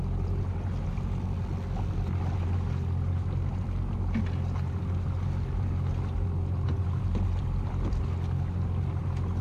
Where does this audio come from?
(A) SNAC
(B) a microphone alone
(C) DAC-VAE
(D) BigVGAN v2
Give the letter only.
B